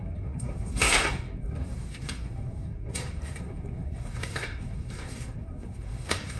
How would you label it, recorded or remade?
remade